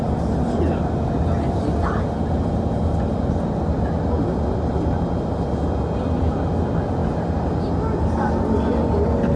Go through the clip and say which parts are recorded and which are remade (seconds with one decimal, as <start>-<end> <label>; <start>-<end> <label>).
0.0-9.4 recorded